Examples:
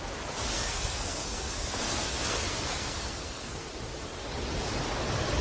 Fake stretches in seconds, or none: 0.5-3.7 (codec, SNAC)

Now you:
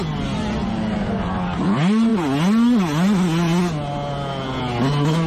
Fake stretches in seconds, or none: none

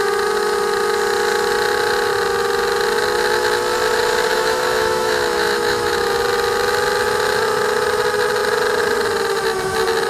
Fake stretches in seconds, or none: 4.3-6.1 (autoencoder, DAC-VAE)

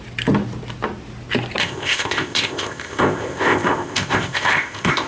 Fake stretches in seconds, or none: 1.6-5.1 (codec, ZipCodec)

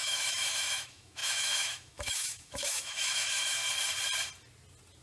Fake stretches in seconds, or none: 0.0-3.6 (autoencoder, DAC-VAE)

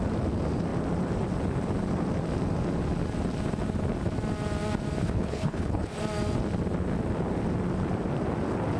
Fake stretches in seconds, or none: 5.0-6.0 (codec, HILCodec)

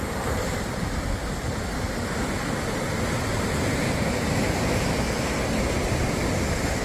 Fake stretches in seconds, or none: 0.0-2.6 (vocoder, BigVGAN v2); 3.3-4.2

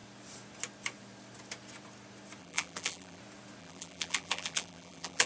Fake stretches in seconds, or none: 2.4-3.2 (vocoder, BigVGAN v2); 3.6-5.3